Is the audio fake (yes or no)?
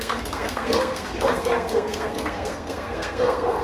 yes